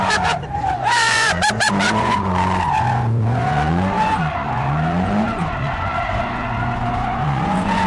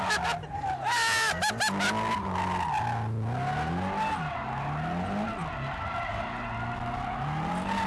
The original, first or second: second